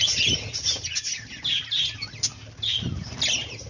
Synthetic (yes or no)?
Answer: no